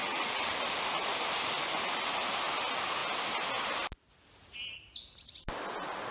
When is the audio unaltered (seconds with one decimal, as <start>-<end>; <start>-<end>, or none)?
0.5-6.1